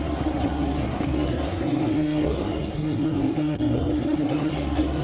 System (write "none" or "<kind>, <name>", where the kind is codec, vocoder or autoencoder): codec, SNAC